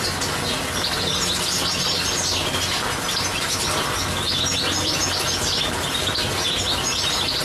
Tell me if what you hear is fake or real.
real